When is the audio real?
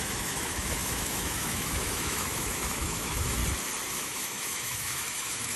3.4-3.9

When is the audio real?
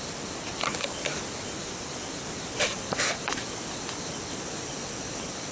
none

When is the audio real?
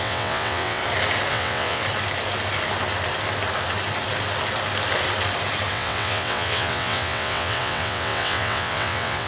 0.8-1.3; 1.8-5.7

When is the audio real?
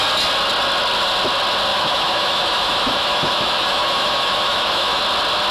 0.0-1.7; 5.0-5.5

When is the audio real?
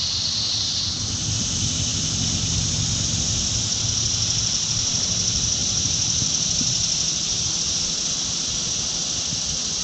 0.0-9.8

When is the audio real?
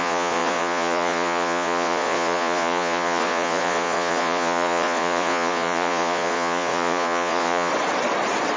7.7-8.6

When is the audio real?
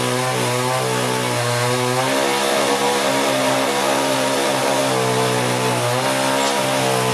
0.0-2.5; 4.8-7.1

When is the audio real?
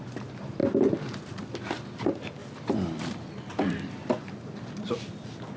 0.0-2.4; 4.9-5.6